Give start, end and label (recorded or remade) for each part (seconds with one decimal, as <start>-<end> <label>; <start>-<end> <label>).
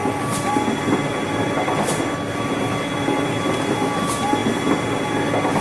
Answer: 0.0-5.6 recorded